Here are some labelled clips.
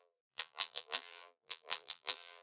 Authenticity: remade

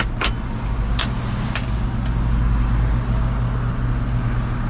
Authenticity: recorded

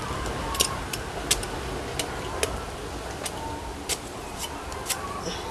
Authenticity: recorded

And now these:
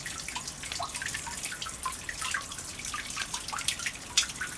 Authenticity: recorded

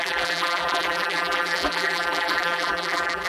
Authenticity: remade